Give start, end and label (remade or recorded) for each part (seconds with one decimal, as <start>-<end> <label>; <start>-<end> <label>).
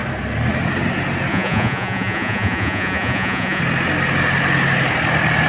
0.0-1.3 recorded; 1.3-3.6 remade; 3.6-5.5 recorded